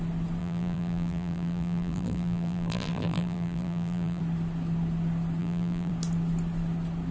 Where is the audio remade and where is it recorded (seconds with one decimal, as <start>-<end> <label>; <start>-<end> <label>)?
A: 0.0-0.4 recorded; 0.4-4.2 remade; 4.2-5.4 recorded; 5.4-5.9 remade; 5.9-7.1 recorded

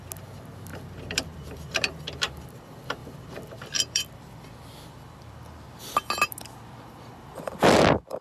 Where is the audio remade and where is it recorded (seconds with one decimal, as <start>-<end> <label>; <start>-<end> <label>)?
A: 0.0-0.7 recorded; 0.7-2.4 remade; 2.4-3.0 recorded; 3.0-5.8 remade; 5.8-8.2 recorded

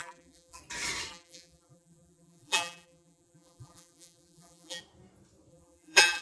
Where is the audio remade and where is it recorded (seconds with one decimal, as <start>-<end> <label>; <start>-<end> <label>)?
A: 0.0-0.6 remade; 0.6-1.1 recorded; 1.1-4.8 remade; 4.8-5.5 recorded; 5.5-6.2 remade

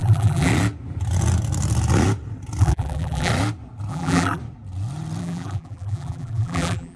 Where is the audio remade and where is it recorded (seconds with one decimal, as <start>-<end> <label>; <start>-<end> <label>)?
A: 0.0-0.5 remade; 0.5-2.6 recorded; 2.6-3.3 remade; 3.3-3.9 recorded; 3.9-4.4 remade; 4.4-5.2 recorded; 5.2-7.0 remade

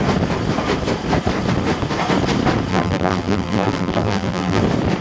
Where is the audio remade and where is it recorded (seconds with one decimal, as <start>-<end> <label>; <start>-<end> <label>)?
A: 0.0-2.7 recorded; 2.7-4.6 remade; 4.6-5.0 recorded

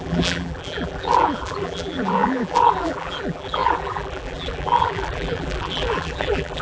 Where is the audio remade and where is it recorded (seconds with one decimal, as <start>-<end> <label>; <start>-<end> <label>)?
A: 0.0-6.6 remade

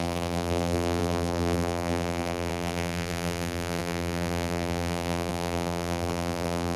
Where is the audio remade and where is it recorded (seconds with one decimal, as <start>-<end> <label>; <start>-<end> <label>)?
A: 0.0-6.8 remade